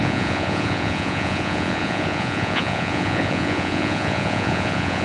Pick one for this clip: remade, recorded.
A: remade